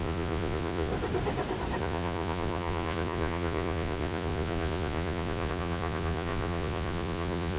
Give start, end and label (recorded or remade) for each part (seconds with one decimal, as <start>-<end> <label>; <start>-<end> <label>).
0.0-0.9 remade; 0.9-1.8 recorded; 1.8-7.6 remade